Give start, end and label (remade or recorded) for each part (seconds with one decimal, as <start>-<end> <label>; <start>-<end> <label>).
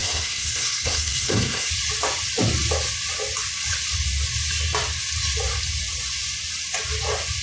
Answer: 0.0-1.7 remade; 1.7-7.4 recorded